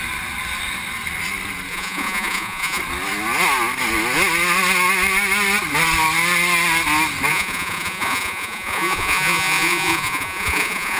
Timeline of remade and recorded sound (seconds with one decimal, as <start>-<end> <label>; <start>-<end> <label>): 0.0-1.7 recorded; 1.7-2.8 remade; 2.8-7.3 recorded; 7.3-11.0 remade